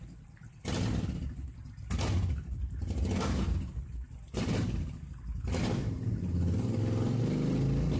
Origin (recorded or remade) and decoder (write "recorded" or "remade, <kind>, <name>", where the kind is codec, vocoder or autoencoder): recorded